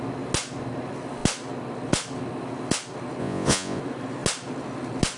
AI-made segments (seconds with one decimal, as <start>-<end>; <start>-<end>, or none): 3.2-3.8